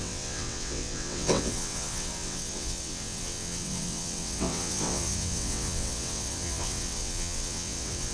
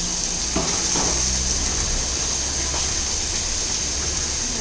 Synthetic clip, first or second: first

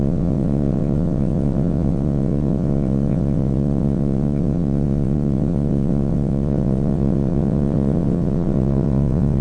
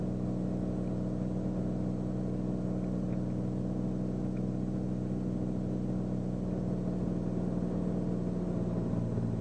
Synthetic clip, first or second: first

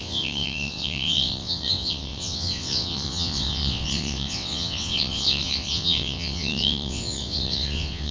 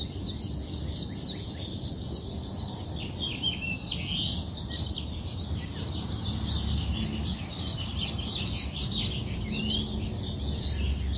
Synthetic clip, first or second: first